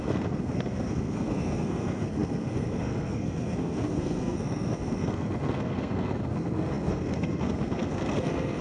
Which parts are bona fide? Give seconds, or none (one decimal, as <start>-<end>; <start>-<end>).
none